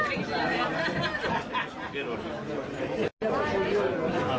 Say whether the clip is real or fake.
real